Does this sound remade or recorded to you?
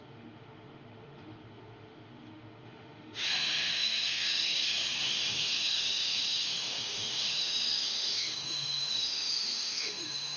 remade